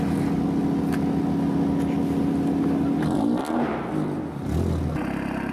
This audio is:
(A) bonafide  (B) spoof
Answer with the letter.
A